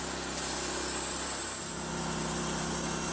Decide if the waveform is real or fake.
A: real